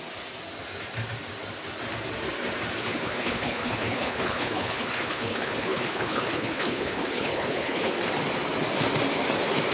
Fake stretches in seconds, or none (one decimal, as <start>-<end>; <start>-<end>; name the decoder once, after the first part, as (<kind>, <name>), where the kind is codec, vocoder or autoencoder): 2.8-7.9 (codec, HILCodec)